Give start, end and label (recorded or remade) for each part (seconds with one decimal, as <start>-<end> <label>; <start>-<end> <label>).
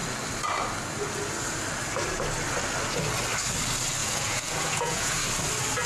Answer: 0.0-4.0 recorded; 4.0-5.2 remade; 5.2-5.9 recorded